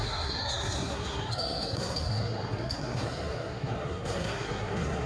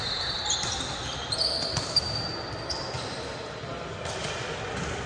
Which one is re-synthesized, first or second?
first